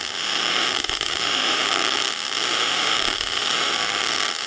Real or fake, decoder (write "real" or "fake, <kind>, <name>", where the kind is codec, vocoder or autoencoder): fake, autoencoder, DAC-VAE